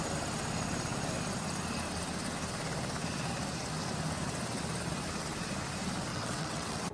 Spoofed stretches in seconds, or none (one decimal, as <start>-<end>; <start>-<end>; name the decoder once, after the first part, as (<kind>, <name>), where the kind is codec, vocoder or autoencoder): 6.1-6.9 (vocoder, WaveNeXt)